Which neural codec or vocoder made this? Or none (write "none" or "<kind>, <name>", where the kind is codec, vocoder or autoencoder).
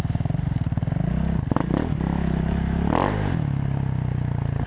none